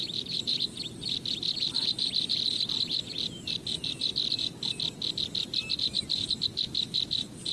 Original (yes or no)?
yes